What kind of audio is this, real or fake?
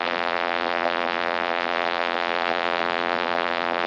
fake